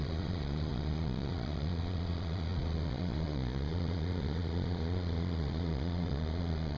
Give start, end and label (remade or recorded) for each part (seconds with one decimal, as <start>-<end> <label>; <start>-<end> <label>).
0.0-6.8 remade